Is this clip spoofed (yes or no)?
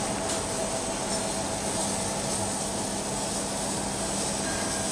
no